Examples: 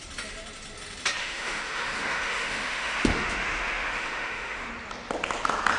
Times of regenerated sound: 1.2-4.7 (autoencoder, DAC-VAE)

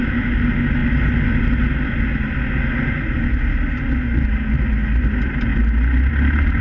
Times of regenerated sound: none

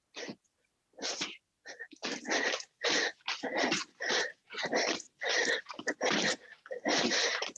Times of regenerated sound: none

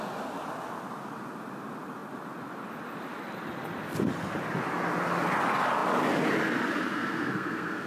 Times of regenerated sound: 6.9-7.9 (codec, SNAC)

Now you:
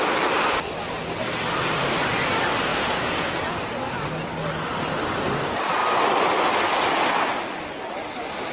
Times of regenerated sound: 2.7-3.4 (vocoder, Vocos)

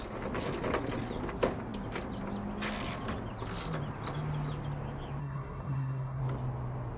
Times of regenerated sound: 5.2-6.2 (codec, SNAC)